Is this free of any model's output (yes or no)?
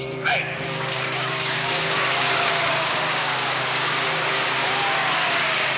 no